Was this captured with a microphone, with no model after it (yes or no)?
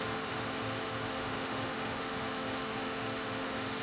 no